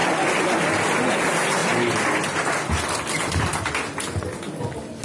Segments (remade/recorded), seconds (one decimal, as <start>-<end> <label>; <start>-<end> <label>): 0.0-5.0 recorded